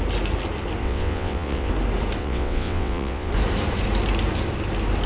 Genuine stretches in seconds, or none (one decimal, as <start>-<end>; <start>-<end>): 0.0-0.8; 1.7-2.2; 3.3-5.1